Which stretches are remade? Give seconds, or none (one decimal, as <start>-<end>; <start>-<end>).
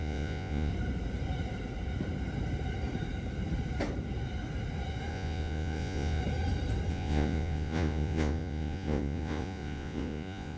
0.0-0.7; 5.1-6.2; 6.9-10.6